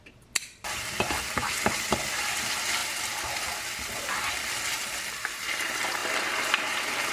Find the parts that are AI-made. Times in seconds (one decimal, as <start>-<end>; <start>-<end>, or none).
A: 6.0-7.1